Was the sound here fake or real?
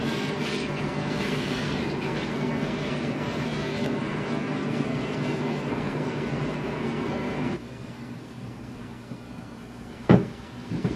fake